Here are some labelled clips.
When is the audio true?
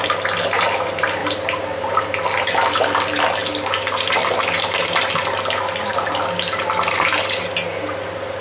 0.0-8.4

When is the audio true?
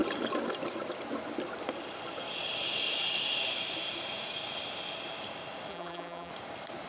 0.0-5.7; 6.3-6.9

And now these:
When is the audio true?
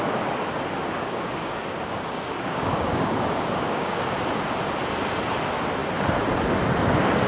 0.0-0.8; 4.2-7.3